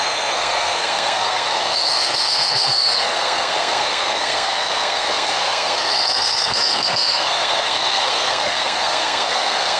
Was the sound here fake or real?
fake